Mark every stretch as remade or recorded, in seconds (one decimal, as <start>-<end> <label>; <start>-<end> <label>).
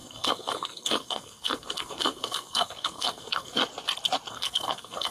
0.0-3.6 remade; 3.6-4.3 recorded; 4.3-5.1 remade